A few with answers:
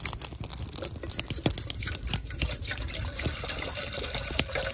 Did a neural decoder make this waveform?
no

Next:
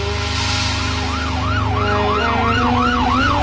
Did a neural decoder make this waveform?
no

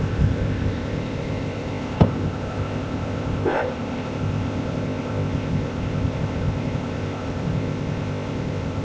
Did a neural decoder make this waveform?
yes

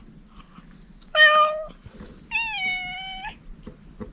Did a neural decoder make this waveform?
no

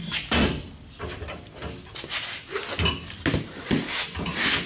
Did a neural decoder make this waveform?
no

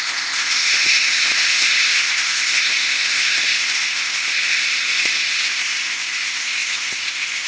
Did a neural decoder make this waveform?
yes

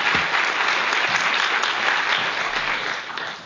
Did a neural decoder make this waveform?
no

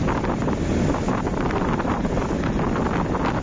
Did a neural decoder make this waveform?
no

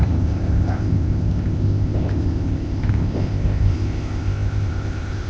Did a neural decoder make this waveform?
yes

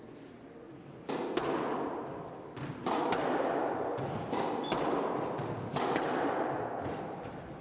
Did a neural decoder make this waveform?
no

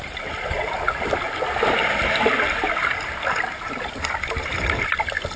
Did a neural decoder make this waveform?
no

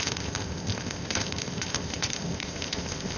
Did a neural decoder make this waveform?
yes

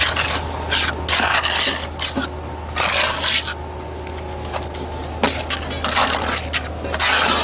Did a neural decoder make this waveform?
no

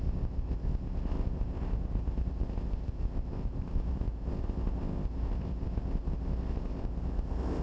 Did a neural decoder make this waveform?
yes